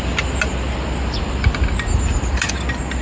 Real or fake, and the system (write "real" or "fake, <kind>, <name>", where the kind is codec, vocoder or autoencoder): real